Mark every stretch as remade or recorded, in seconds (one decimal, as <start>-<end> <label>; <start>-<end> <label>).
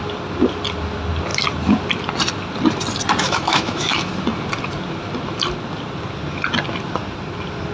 0.0-3.2 recorded; 3.2-4.1 remade; 4.1-7.7 recorded